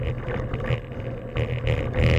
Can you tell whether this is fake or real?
real